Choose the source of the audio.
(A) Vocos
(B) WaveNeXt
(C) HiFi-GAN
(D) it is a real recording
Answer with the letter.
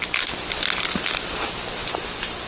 D